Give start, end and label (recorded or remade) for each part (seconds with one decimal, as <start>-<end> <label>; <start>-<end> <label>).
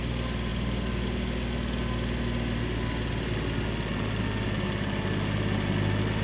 0.0-6.2 recorded